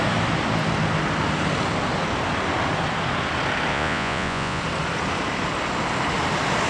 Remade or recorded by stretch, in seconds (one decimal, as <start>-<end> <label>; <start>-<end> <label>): 0.0-3.7 recorded; 3.7-4.6 remade; 4.6-6.7 recorded